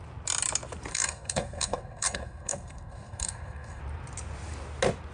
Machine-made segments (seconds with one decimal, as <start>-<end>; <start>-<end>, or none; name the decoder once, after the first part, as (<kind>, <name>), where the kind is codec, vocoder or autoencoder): 0.9-3.8 (codec, SNAC)